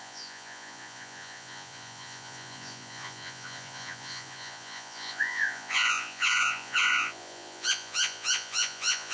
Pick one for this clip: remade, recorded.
remade